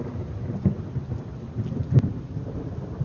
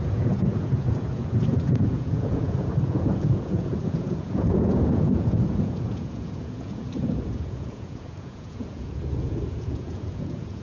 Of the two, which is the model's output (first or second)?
second